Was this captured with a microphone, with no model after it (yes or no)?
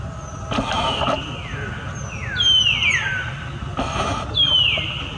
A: yes